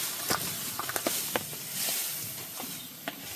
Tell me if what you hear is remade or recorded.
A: recorded